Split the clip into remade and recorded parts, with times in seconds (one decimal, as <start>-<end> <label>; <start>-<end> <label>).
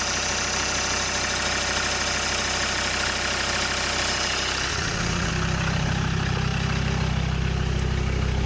0.0-4.7 recorded; 4.7-5.3 remade; 5.3-8.5 recorded